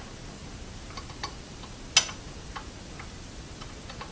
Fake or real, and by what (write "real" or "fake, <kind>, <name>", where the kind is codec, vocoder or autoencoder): real